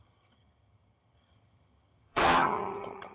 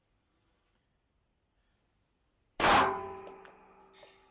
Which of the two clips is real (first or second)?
second